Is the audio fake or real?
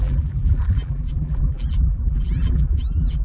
fake